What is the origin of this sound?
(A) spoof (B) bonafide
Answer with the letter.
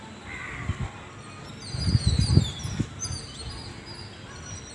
B